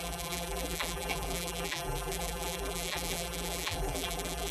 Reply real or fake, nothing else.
fake